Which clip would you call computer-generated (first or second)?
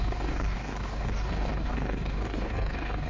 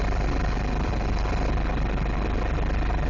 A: first